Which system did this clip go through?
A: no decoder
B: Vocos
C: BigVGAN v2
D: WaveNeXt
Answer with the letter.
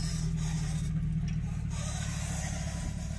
A